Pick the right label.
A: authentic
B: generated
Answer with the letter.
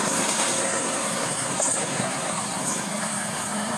B